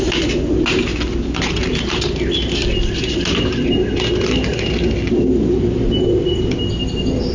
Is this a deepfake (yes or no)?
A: no